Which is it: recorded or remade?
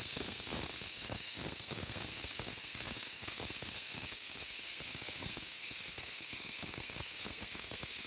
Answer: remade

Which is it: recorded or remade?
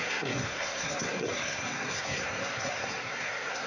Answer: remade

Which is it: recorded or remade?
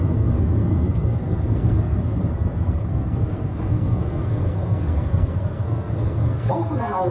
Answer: remade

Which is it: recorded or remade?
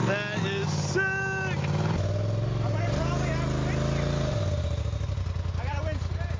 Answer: recorded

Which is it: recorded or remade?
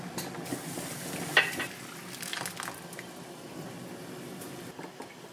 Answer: recorded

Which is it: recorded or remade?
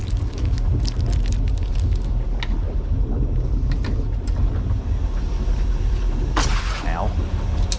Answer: recorded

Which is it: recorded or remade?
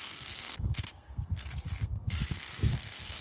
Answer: remade